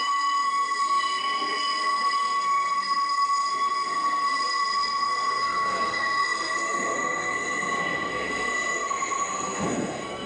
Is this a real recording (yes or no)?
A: no